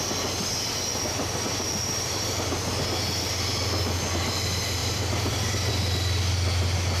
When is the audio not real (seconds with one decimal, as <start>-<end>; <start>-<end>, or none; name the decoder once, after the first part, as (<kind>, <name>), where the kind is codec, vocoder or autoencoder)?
0.9-2.5 (vocoder, BigVGAN v2); 4.8-5.7